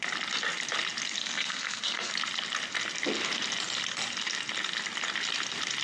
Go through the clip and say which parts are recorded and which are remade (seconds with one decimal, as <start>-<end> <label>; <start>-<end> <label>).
0.0-1.2 recorded; 1.2-2.1 remade; 2.1-5.8 recorded